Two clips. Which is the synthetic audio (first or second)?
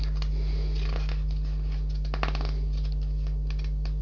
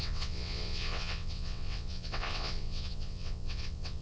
second